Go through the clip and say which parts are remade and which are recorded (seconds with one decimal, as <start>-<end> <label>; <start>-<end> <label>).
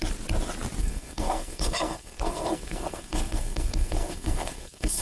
0.0-0.8 recorded; 0.8-5.0 remade